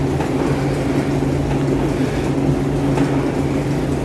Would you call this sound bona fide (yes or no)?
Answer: yes